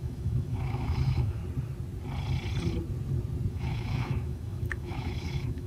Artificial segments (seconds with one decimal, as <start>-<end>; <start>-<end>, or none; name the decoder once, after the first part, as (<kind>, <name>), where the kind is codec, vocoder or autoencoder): 0.0-1.4 (autoencoder, DAC-VAE); 3.5-5.7